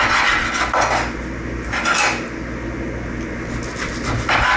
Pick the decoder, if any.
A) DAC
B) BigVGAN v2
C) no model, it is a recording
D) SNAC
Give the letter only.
C